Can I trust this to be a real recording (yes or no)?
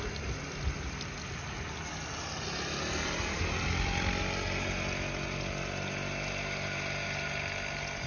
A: yes